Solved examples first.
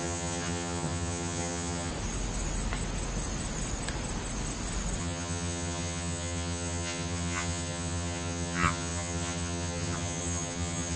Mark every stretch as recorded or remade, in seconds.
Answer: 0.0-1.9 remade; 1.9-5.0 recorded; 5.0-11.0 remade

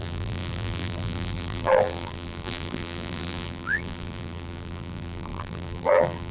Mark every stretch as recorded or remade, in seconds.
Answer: 0.0-6.3 remade

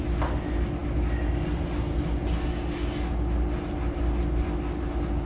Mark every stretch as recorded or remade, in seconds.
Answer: 0.0-5.3 recorded

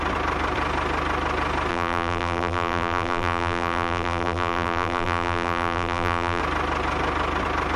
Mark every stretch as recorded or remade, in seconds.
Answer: 0.0-1.7 recorded; 1.7-6.4 remade; 6.4-7.8 recorded

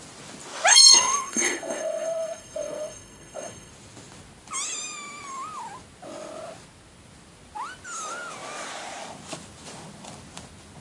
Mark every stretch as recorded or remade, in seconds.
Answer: 0.0-0.7 recorded; 0.7-3.7 remade; 3.7-10.8 recorded